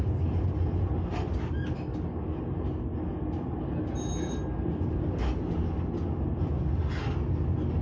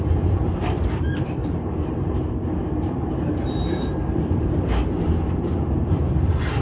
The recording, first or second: first